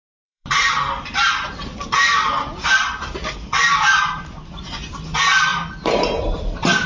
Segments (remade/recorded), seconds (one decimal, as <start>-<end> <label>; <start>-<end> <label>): 0.0-0.7 remade; 0.7-1.7 recorded; 1.7-4.0 remade; 4.0-5.5 recorded; 5.5-6.9 remade